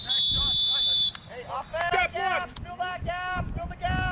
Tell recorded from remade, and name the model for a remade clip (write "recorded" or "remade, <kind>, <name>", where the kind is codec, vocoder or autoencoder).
recorded